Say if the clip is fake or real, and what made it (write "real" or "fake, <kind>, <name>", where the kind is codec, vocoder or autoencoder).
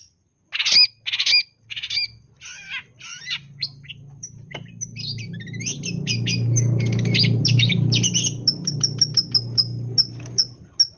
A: real